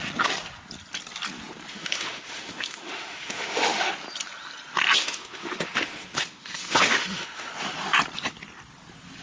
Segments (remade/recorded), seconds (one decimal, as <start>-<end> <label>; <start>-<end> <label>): 0.0-1.7 recorded; 1.7-3.9 remade; 3.9-5.0 recorded; 5.0-7.5 remade; 7.5-9.2 recorded